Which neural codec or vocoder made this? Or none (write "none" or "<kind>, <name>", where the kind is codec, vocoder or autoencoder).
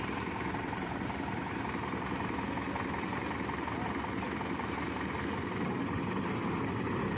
none